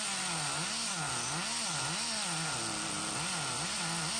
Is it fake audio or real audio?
real